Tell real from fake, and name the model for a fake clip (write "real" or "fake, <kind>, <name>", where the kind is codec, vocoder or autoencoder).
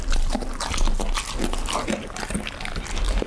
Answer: real